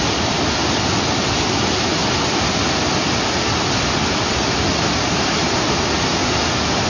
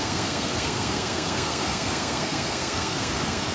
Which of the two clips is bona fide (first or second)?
first